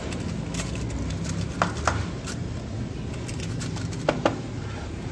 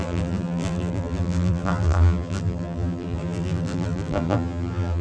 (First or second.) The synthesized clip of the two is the second